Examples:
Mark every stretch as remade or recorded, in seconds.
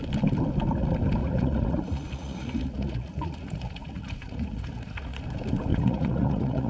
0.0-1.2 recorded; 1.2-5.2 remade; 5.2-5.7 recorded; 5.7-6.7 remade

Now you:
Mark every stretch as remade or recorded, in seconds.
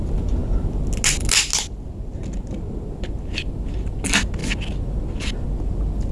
0.0-6.1 recorded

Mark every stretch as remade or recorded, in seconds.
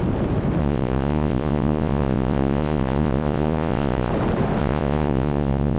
0.0-0.6 recorded; 0.6-4.1 remade; 4.1-4.6 recorded; 4.6-5.8 remade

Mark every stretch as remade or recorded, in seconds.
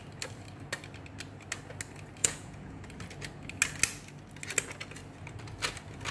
0.0-2.2 recorded; 2.2-2.8 remade; 2.8-6.1 recorded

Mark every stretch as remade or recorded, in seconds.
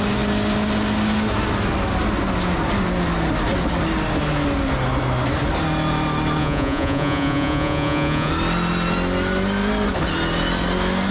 0.0-6.4 recorded; 6.4-8.3 remade; 8.3-11.1 recorded